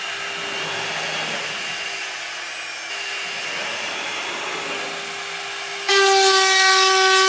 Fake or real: real